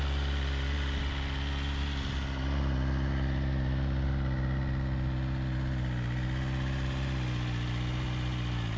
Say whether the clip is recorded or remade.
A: recorded